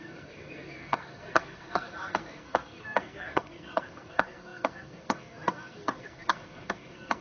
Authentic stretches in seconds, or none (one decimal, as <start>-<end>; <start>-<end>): none